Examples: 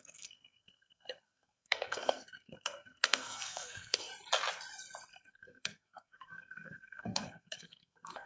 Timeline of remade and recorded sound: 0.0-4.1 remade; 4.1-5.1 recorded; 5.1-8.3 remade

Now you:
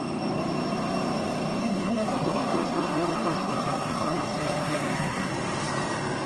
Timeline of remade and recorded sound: 0.0-1.6 recorded; 1.6-5.3 remade; 5.3-6.3 recorded